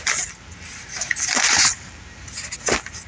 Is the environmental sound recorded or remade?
recorded